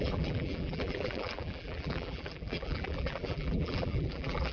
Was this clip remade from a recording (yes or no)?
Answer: yes